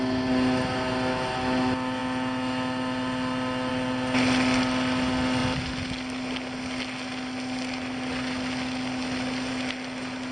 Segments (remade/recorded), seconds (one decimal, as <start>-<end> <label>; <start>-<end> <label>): 0.0-10.3 recorded